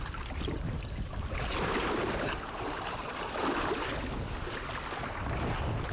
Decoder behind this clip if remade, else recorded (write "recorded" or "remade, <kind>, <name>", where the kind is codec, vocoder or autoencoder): recorded